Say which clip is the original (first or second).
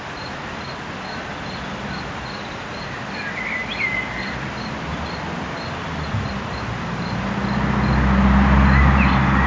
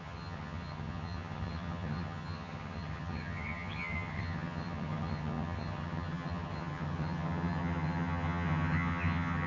first